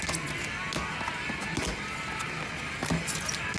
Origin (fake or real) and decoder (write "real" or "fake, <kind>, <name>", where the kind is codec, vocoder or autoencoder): real